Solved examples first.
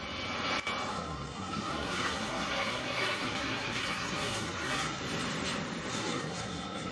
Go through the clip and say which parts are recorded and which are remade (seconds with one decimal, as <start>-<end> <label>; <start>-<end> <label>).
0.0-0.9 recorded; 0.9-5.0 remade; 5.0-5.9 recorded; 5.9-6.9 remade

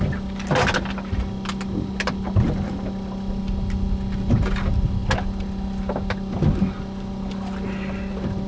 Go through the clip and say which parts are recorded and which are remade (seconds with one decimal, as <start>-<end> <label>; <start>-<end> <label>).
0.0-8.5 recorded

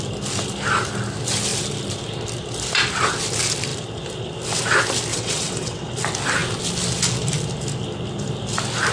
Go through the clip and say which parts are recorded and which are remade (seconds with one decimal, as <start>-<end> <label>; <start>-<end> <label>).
0.0-5.1 recorded; 5.1-5.9 remade; 5.9-8.9 recorded

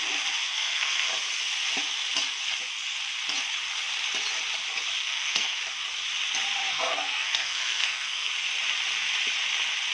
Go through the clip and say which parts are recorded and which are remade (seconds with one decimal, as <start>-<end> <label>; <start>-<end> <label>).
0.0-0.4 recorded; 0.4-1.1 remade; 1.1-5.0 recorded; 5.0-5.6 remade; 5.6-6.6 recorded; 6.6-8.3 remade; 8.3-9.9 recorded

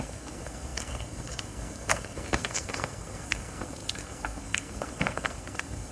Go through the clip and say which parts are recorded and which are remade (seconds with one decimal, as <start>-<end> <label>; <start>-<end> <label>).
0.0-5.9 remade